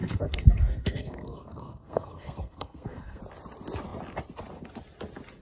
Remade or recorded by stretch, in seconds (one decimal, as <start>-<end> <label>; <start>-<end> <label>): 0.0-3.2 remade; 3.2-5.4 recorded